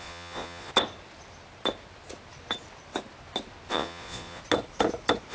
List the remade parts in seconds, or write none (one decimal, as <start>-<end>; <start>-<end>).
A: 0.0-0.7; 3.7-4.4